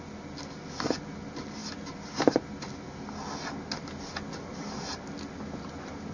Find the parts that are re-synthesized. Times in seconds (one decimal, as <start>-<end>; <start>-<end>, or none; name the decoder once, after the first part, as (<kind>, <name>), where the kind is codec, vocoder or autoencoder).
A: none